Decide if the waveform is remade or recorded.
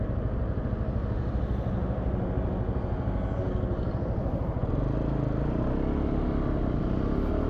recorded